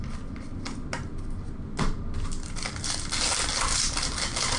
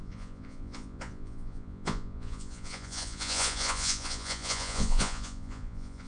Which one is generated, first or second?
second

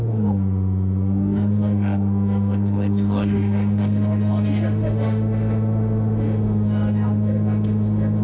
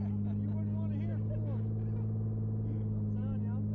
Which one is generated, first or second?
first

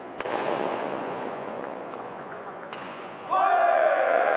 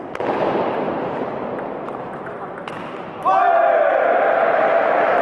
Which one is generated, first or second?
first